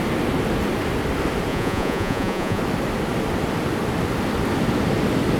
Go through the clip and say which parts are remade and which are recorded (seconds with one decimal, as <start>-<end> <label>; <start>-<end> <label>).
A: 0.0-1.5 recorded; 1.5-2.6 remade; 2.6-5.4 recorded